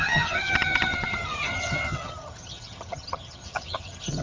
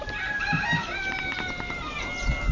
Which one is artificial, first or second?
first